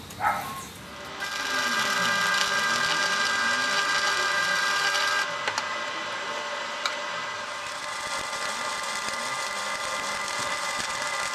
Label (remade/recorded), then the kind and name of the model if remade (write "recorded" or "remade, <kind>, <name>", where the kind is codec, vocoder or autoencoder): recorded